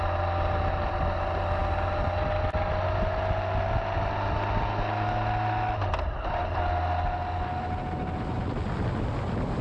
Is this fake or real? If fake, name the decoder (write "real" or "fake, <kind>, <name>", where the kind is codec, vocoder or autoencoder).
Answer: real